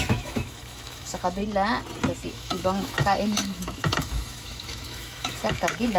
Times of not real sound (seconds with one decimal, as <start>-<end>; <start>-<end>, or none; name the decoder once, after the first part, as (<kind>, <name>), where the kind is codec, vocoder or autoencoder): 0.0-1.4 (autoencoder, DAC-VAE); 2.3-6.0